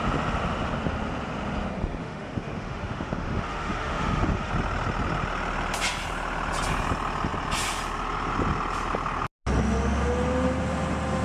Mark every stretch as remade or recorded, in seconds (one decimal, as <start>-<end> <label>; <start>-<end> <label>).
0.0-2.0 recorded; 2.0-4.5 remade; 4.5-11.2 recorded